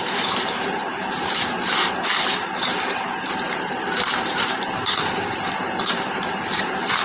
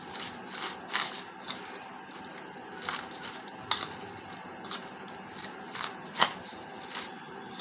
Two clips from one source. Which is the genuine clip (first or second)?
second